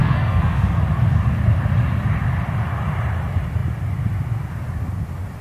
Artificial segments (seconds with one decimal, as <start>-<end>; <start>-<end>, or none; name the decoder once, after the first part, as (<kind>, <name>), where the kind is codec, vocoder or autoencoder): 0.0-0.8 (codec, SNAC)